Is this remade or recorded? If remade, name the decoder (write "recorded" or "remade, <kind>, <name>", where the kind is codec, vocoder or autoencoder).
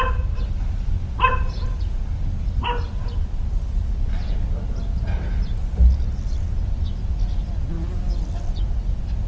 recorded